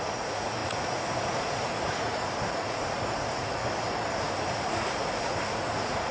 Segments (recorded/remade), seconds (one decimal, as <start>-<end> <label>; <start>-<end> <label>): 0.0-3.6 remade; 3.6-4.2 recorded; 4.2-6.1 remade